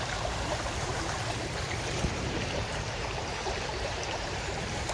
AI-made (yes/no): yes